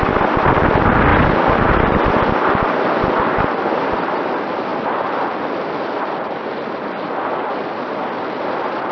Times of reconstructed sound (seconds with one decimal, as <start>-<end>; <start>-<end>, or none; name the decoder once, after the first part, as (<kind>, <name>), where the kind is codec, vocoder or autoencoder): 1.1-4.0 (vocoder, BigVGAN v2); 4.7-6.3

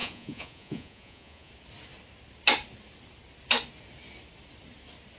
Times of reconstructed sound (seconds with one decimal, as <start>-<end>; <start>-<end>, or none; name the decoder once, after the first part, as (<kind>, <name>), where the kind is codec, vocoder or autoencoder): 0.0-1.5 (vocoder, Vocos)

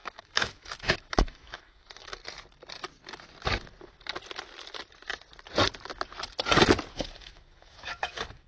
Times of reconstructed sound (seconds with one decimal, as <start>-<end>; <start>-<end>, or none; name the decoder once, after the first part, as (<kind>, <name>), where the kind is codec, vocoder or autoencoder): 0.0-2.2 (autoencoder, DAC-VAE); 6.9-8.5

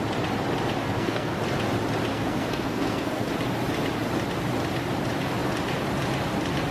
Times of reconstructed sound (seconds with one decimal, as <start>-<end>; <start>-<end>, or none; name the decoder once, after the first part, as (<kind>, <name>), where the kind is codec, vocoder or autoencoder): 0.8-1.4 (codec, SNAC); 2.1-3.3

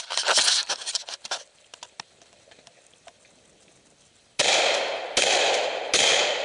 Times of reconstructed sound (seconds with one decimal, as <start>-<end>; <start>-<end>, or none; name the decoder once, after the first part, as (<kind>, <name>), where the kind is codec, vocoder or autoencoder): none

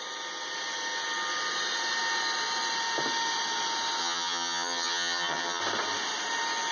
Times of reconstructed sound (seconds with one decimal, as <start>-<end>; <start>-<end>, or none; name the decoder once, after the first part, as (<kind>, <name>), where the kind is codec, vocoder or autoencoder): 4.0-5.6 (vocoder, HiFi-GAN)

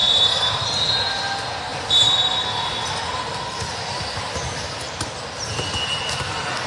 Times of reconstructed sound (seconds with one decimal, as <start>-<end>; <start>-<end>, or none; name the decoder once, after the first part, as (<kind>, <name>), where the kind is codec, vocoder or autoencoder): 1.7-3.0 (vocoder, BigVGAN v2)

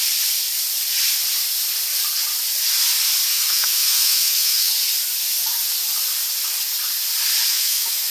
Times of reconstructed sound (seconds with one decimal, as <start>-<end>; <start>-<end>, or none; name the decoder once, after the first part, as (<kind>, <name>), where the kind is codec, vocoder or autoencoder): 3.3-4.7 (autoencoder, DAC-VAE); 7.5-8.1